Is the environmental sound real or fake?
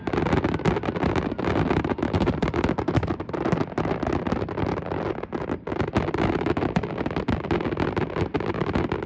real